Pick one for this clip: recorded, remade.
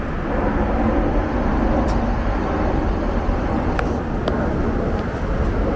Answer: recorded